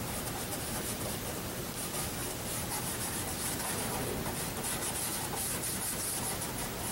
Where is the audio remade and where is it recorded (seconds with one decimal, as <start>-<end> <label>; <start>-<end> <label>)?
0.0-0.5 recorded; 0.5-1.7 remade; 1.7-2.2 recorded; 2.2-3.1 remade; 3.1-6.9 recorded